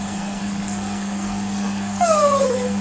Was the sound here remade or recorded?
remade